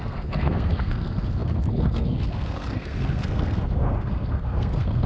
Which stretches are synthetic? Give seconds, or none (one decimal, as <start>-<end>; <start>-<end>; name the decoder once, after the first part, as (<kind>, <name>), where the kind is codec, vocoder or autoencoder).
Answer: 0.0-5.1 (codec, SNAC)